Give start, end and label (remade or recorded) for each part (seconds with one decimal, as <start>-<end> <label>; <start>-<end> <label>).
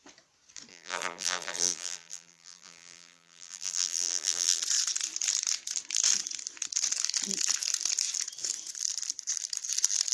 0.0-0.7 recorded; 0.7-4.6 remade; 4.6-10.1 recorded